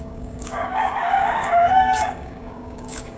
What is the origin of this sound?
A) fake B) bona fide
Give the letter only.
A